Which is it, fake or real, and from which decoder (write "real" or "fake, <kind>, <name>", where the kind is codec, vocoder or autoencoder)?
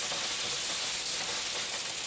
real